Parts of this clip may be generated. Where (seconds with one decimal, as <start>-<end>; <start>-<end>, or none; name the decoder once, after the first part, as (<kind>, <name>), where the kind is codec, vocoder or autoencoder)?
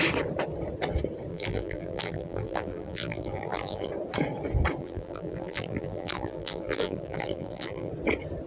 1.3-3.9 (vocoder, BigVGAN v2); 4.8-7.9